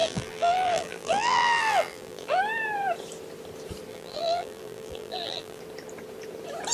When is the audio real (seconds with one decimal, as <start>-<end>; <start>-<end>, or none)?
2.4-3.9; 5.6-6.7

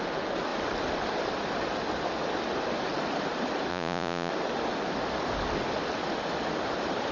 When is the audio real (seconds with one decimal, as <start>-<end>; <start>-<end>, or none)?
0.0-3.7; 4.3-7.1

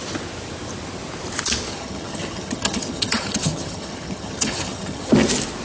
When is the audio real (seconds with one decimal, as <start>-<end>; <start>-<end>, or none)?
0.0-1.7; 5.1-5.6

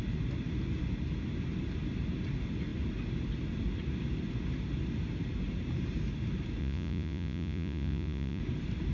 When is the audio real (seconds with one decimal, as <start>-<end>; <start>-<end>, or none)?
0.0-6.6; 8.4-8.9